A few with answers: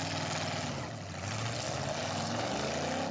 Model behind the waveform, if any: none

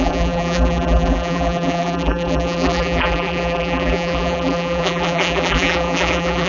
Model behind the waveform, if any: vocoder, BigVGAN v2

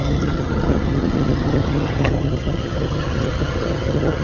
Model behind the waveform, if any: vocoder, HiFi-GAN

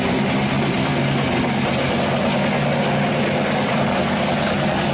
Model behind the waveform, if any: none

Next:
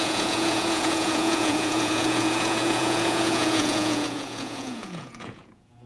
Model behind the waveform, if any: vocoder, Vocos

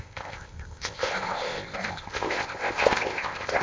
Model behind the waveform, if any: codec, ZipCodec